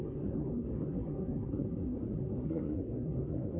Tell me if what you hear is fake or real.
fake